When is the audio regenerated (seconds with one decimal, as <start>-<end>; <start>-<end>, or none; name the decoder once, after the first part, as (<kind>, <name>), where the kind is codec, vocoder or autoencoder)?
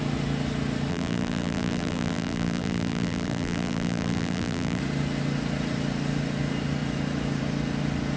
0.9-4.8 (vocoder, BigVGAN v2)